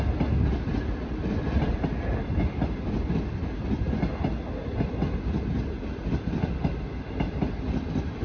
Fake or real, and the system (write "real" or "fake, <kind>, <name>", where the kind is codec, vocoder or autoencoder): real